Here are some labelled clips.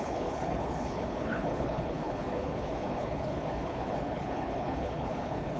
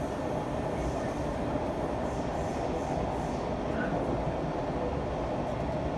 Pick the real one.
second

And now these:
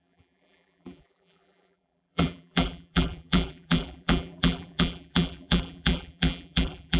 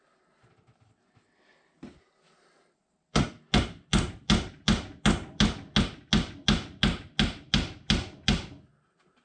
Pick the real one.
second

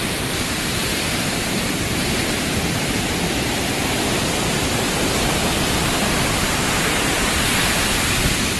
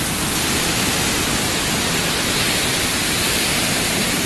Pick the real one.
second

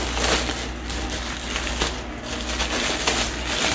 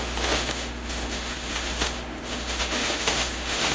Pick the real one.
first